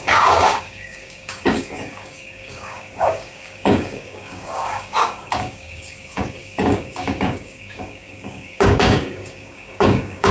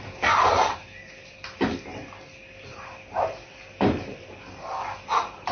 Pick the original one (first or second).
second